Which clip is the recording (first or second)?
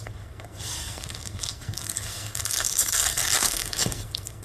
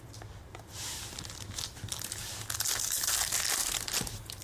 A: second